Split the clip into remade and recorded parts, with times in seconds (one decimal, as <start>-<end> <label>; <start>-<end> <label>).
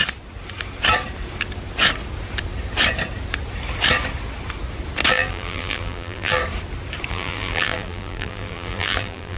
0.0-5.1 recorded; 5.1-6.4 remade; 6.4-7.1 recorded; 7.1-9.4 remade